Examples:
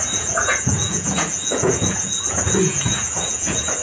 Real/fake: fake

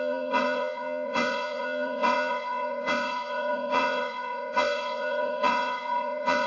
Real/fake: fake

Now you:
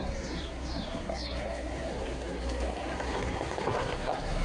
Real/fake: fake